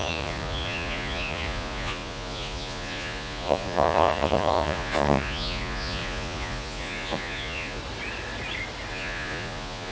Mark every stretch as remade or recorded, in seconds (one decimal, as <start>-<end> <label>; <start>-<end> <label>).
0.0-7.8 remade; 7.8-8.9 recorded; 8.9-9.9 remade